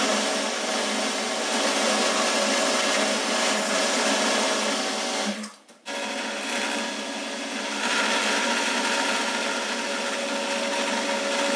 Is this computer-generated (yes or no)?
no